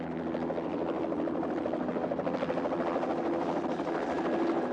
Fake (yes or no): no